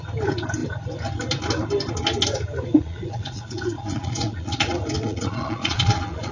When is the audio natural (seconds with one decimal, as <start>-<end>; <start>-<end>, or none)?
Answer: 0.0-2.7